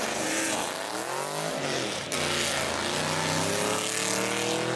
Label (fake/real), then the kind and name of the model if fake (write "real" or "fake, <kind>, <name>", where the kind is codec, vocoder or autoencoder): real